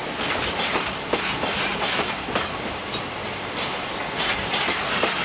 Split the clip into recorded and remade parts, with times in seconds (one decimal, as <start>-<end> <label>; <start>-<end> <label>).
0.0-5.2 recorded